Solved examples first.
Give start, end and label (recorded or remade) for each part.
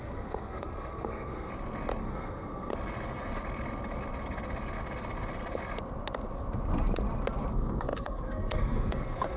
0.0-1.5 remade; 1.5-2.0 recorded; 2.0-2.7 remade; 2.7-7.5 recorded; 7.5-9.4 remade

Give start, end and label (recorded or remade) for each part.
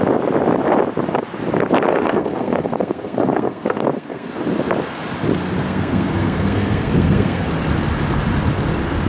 0.0-1.9 recorded; 1.9-4.3 remade; 4.3-5.6 recorded; 5.6-7.5 remade; 7.5-9.1 recorded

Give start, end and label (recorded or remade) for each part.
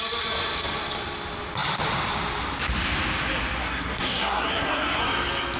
0.0-3.6 recorded; 3.6-5.0 remade; 5.0-5.6 recorded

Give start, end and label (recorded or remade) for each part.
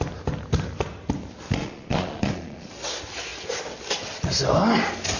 0.0-1.6 recorded; 1.6-2.8 remade; 2.8-5.2 recorded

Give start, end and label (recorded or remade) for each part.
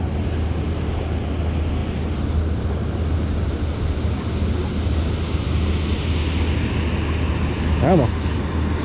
0.0-8.8 recorded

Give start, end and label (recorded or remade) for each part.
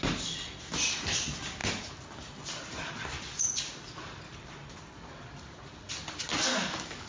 0.0-6.5 recorded; 6.5-7.1 remade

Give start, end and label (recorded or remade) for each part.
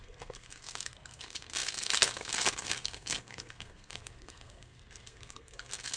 0.0-6.0 remade